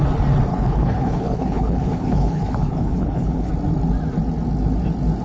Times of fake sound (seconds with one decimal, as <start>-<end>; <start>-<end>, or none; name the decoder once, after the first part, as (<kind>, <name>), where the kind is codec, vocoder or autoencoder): 0.5-3.5 (codec, HILCodec)